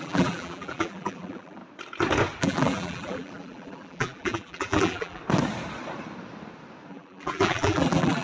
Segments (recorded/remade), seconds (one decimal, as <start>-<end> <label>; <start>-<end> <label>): 0.0-1.6 remade; 1.6-2.4 recorded; 2.4-5.2 remade; 5.2-6.9 recorded; 6.9-8.2 remade